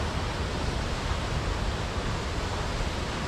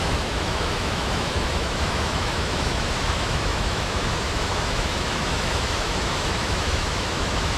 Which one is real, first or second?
first